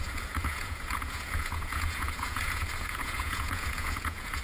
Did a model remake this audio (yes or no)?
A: yes